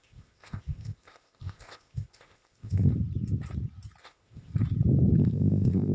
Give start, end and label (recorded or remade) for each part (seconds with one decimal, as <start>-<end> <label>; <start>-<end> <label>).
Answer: 0.0-2.9 remade; 2.9-4.0 recorded; 4.0-4.5 remade; 4.5-5.2 recorded; 5.2-5.9 remade